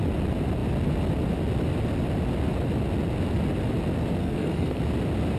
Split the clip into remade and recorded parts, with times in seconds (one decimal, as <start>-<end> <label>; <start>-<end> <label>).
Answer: 0.0-4.2 recorded; 4.2-4.8 remade; 4.8-5.4 recorded